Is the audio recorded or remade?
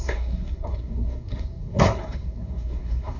remade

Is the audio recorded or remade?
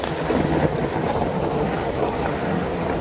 recorded